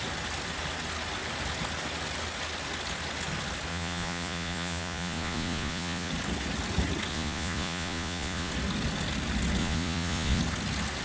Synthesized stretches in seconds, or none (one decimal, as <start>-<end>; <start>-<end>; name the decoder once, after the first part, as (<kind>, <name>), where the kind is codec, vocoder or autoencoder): 3.7-6.1 (vocoder, Vocos); 7.1-8.5; 9.6-10.4